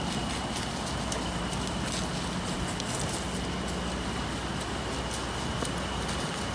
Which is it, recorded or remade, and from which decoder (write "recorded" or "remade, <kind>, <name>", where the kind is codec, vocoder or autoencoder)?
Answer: recorded